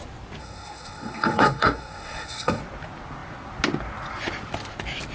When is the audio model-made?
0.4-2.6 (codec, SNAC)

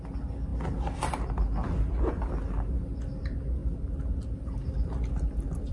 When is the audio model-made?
none

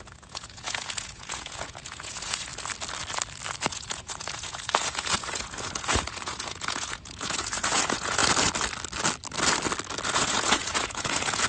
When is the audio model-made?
0.0-2.5 (vocoder, Vocos); 3.7-8.2; 10.1-11.5

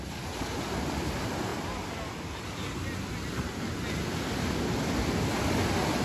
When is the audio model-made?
none

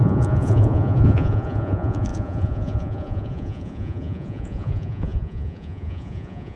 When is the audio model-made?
0.0-6.6 (vocoder, Vocos)

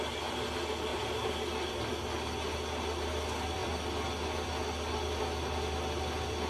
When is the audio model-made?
none

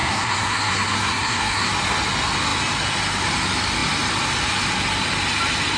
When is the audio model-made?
0.0-1.7 (codec, SNAC)